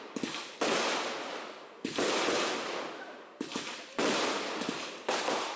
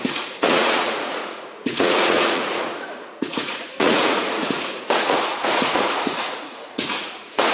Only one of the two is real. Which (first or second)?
first